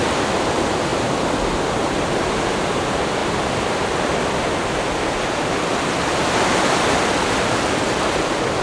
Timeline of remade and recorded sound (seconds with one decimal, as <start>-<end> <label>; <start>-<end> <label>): 0.0-8.6 recorded